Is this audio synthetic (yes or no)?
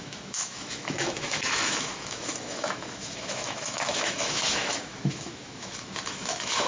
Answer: yes